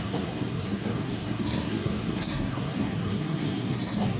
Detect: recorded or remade remade